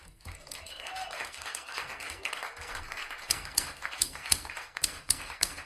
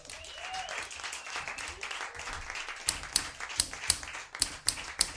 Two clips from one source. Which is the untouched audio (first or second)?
second